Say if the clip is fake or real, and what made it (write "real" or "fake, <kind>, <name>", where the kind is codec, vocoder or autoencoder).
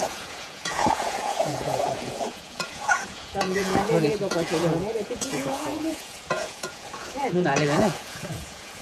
fake, vocoder, Vocos